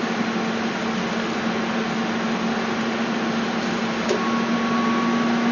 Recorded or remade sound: recorded